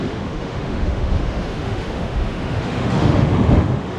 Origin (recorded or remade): remade